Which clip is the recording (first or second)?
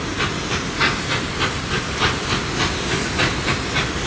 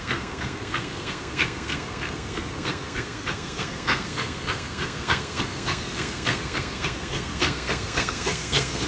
first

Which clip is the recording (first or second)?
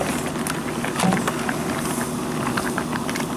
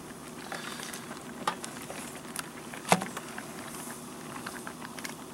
first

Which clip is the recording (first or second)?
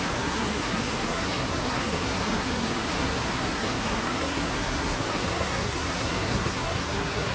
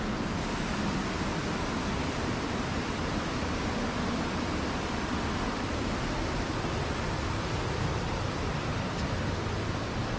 second